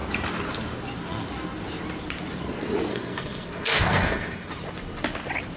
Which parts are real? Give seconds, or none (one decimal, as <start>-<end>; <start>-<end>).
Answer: 0.0-2.9; 4.5-5.6